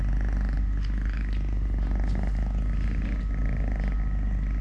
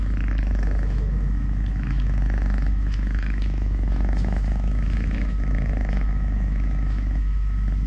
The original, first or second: first